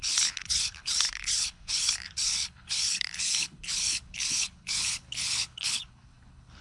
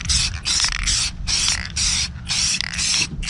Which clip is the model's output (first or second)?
first